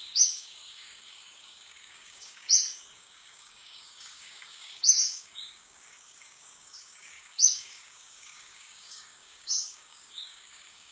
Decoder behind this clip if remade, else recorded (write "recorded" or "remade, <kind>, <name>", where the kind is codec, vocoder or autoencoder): remade, codec, DAC